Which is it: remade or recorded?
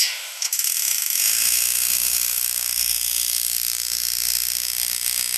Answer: remade